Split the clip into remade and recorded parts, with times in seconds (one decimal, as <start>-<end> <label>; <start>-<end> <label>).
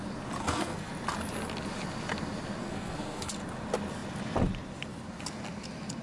0.0-0.4 recorded; 0.4-0.9 remade; 0.9-2.6 recorded; 2.6-3.3 remade; 3.3-6.0 recorded